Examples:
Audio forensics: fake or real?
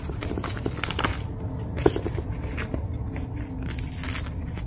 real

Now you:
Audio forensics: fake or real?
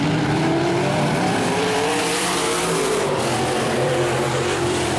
fake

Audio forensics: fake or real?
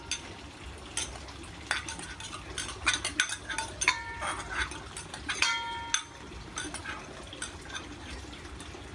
real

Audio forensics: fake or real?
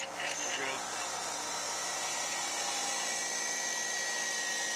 real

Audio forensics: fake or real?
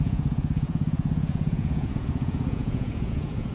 fake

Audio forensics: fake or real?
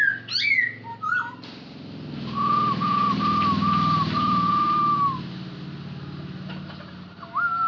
real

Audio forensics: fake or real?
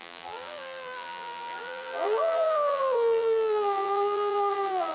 fake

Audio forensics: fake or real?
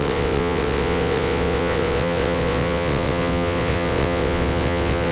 fake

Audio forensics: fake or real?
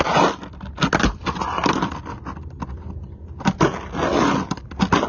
real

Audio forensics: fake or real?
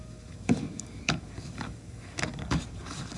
fake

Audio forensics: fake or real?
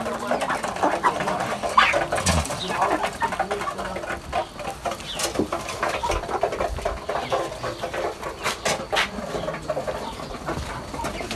real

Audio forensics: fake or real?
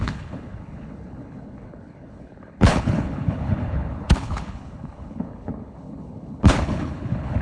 fake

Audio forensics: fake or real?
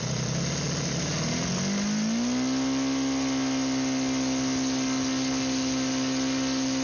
real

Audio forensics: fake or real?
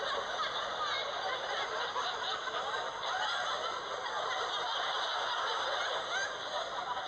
real